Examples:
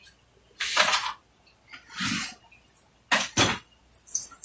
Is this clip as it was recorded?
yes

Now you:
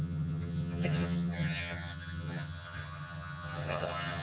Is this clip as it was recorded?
no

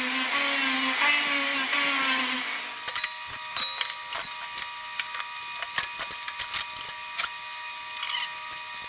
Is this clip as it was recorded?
yes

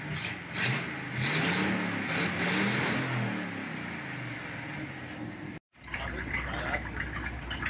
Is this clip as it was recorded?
yes